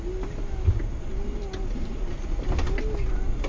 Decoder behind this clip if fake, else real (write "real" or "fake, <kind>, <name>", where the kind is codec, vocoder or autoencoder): real